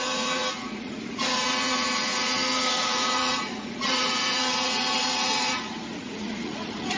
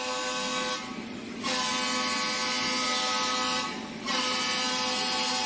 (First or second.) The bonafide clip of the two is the second